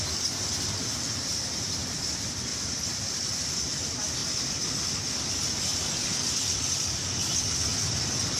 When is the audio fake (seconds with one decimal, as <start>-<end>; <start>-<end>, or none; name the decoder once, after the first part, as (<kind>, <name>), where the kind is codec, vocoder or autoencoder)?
0.0-7.7 (vocoder, BigVGAN v2)